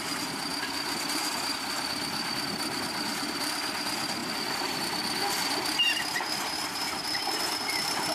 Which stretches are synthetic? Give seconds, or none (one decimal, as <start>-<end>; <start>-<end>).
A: none